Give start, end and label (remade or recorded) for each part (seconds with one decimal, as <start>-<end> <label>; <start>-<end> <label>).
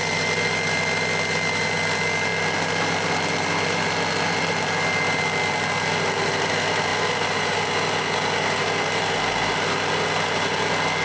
0.0-11.0 recorded